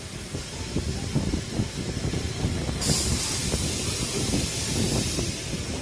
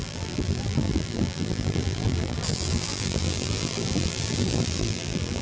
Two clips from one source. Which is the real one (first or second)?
first